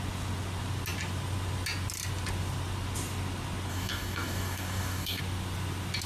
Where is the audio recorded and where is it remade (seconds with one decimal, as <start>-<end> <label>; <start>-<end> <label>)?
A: 0.0-3.7 recorded; 3.7-5.2 remade; 5.2-6.1 recorded